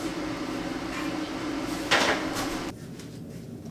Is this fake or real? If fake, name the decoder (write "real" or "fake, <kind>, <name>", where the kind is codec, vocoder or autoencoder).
real